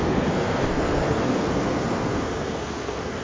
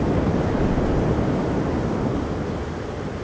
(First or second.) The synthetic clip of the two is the first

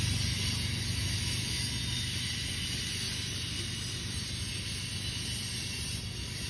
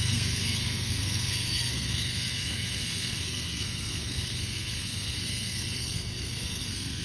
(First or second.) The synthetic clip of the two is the second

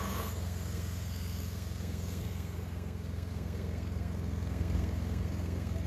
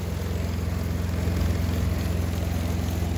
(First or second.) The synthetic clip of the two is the first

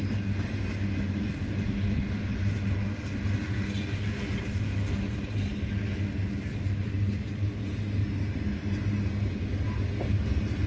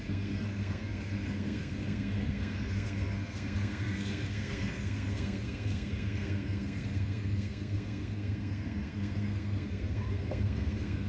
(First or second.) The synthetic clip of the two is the second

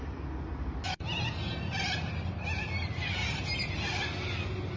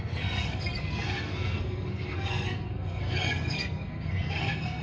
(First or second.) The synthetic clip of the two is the second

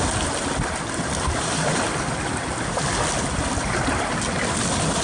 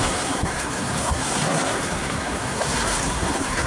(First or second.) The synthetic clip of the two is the second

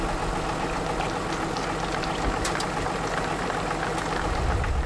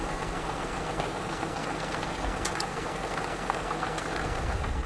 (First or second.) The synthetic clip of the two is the second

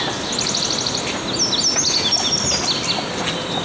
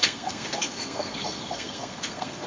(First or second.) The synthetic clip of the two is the second